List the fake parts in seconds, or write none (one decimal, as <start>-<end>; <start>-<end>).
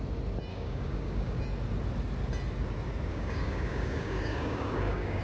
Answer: 0.5-1.4; 3.1-5.2